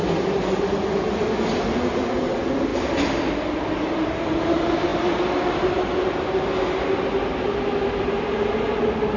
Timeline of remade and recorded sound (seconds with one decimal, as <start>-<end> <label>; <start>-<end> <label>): 0.0-9.2 recorded